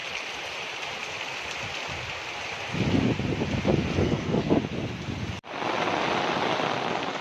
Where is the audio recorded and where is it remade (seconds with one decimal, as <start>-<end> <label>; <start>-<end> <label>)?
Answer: 0.0-4.0 recorded; 4.0-4.6 remade; 4.6-7.2 recorded